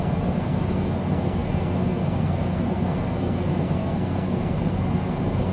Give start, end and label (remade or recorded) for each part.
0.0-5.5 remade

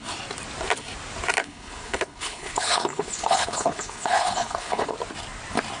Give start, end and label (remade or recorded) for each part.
0.0-1.4 recorded; 1.4-4.9 remade; 4.9-5.8 recorded

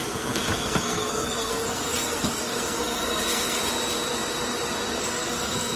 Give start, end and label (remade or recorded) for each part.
0.0-3.6 remade; 3.6-5.0 recorded; 5.0-5.8 remade